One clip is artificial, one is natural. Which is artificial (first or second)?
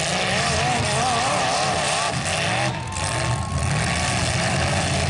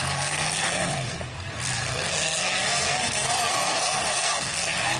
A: second